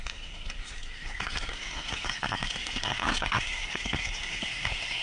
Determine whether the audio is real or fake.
fake